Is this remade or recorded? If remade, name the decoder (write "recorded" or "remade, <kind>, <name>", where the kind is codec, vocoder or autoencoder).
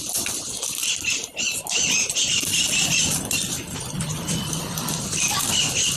recorded